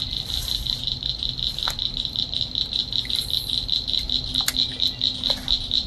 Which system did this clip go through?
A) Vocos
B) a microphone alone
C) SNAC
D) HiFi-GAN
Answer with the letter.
B